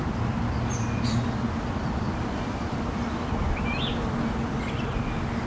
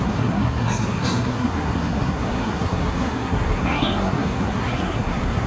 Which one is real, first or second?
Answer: first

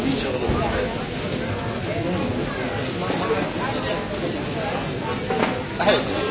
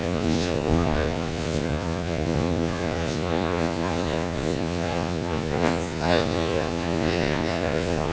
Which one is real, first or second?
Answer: first